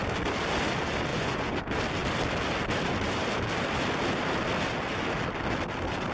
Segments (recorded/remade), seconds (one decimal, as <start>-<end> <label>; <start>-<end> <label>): 0.0-1.1 recorded; 1.1-1.6 remade; 1.6-6.1 recorded